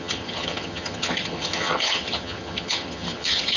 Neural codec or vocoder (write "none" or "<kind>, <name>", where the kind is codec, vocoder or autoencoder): vocoder, HiFi-GAN